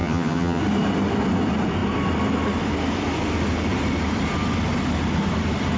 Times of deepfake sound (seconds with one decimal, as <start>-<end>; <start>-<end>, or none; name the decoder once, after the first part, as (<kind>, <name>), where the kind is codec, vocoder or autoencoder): 0.0-0.6 (vocoder, HiFi-GAN)

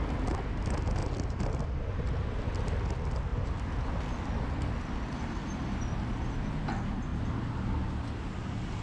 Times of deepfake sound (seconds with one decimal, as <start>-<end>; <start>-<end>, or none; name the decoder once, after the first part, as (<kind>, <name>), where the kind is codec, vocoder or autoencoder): 1.0-1.9 (vocoder, BigVGAN v2); 3.3-3.9

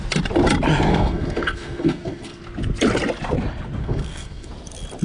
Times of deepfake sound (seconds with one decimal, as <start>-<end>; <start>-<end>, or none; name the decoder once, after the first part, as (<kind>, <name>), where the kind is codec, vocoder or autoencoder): 0.9-2.4 (codec, SNAC); 3.8-4.5

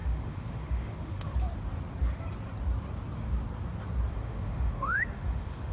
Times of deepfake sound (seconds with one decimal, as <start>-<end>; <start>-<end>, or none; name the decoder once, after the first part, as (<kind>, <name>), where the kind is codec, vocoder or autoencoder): 0.0-1.3 (autoencoder, DAC-VAE); 4.1-5.7

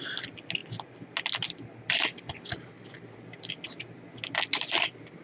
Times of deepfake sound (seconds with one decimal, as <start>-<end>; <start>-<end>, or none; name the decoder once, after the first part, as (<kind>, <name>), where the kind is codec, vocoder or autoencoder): none

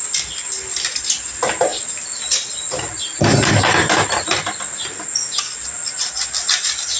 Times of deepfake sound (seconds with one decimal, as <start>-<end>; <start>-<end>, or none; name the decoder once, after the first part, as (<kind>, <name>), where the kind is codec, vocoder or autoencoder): none

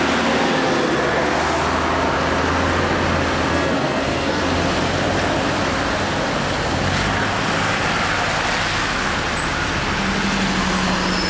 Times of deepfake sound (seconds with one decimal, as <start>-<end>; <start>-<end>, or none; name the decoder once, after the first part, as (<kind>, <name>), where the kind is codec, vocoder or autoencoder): 3.5-4.4 (codec, SNAC)

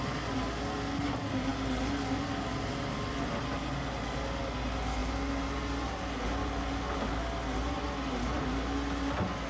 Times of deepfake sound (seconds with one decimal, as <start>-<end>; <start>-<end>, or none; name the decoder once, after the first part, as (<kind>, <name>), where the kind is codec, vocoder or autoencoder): none